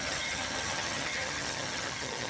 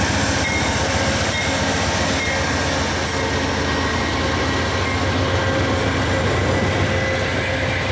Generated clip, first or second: first